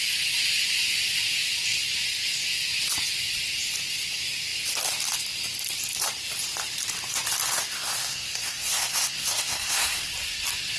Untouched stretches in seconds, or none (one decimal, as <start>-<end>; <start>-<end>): 0.0-7.7; 10.1-10.8

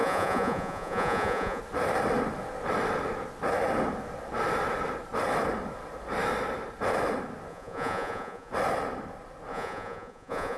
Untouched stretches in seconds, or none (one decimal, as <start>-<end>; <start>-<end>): 1.6-7.5; 8.5-9.5

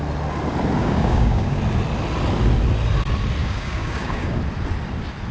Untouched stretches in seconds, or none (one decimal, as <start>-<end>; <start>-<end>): 0.0-0.8; 1.6-3.4; 4.4-5.3